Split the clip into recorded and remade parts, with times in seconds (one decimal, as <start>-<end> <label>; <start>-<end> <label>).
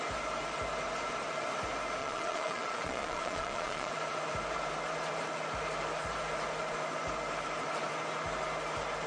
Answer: 0.0-2.0 recorded; 2.0-3.9 remade; 3.9-9.1 recorded